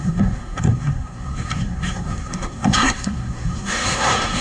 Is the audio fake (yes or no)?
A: yes